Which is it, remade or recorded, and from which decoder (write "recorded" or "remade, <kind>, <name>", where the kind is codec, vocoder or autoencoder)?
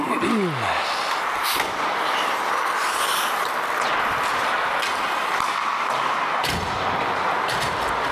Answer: recorded